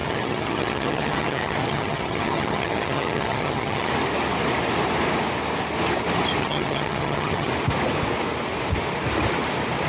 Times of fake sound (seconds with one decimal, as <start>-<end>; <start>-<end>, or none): 0.0-3.9; 6.4-7.5